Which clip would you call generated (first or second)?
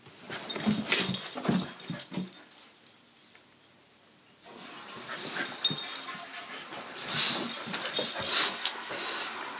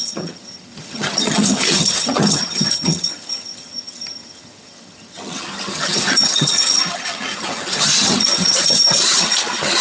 second